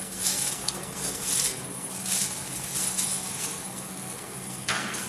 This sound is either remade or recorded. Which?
remade